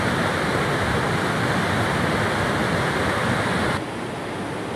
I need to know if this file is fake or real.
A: real